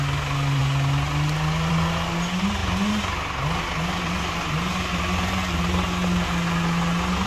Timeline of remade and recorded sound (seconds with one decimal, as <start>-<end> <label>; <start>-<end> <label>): 0.0-7.3 recorded